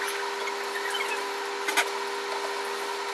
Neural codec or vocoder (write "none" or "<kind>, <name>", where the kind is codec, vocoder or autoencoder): none